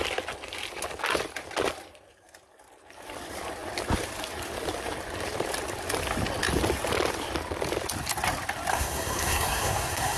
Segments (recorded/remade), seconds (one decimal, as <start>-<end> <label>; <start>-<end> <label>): 0.0-8.7 recorded; 8.7-10.2 remade